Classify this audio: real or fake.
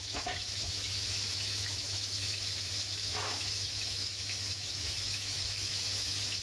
fake